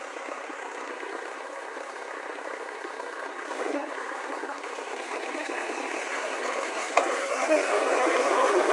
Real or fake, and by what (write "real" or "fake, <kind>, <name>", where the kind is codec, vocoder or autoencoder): fake, codec, SNAC